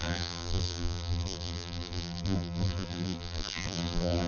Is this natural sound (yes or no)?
no